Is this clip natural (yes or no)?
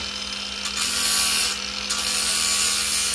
yes